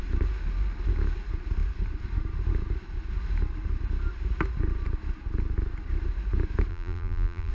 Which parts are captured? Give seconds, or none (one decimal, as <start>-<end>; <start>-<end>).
0.0-6.7